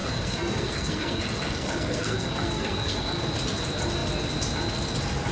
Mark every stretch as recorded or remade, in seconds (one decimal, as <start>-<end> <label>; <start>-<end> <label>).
0.0-3.2 remade; 3.2-5.3 recorded